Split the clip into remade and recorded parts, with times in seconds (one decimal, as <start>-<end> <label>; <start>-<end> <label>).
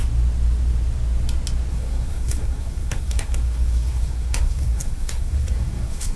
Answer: 0.0-1.7 recorded; 1.7-6.2 remade